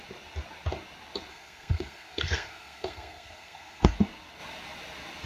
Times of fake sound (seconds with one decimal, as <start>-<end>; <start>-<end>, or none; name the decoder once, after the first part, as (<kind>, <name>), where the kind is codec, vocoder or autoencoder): 1.3-3.9 (codec, SNAC)